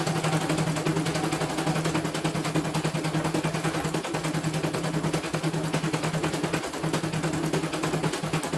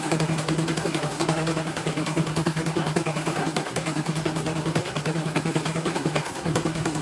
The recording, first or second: first